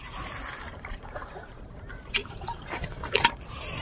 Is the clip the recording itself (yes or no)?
no